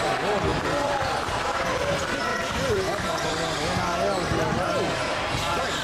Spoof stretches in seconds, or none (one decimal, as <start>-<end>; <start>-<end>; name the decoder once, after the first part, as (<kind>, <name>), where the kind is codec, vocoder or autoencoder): 0.5-1.4 (vocoder, BigVGAN v2); 2.3-3.3; 5.1-5.8